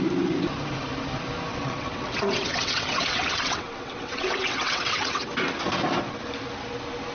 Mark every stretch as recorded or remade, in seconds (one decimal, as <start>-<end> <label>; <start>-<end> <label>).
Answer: 0.0-1.5 recorded; 1.5-5.3 remade; 5.3-7.1 recorded